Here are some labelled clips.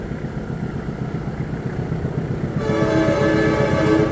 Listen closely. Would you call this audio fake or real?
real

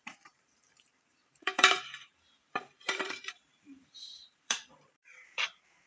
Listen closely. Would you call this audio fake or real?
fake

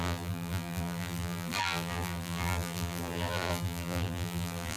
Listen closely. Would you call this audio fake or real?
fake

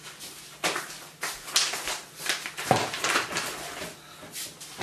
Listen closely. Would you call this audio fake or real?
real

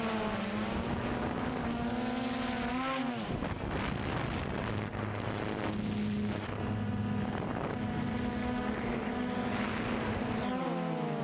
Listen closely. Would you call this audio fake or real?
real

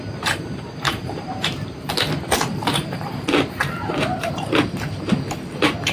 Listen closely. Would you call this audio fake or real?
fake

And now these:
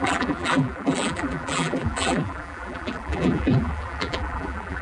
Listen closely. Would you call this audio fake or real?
fake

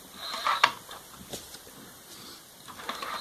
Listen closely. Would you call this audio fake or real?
fake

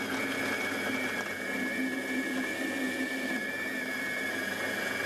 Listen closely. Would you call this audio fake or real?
real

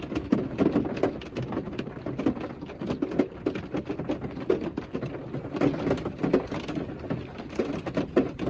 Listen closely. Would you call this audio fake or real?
real